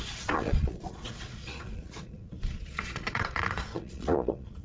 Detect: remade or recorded remade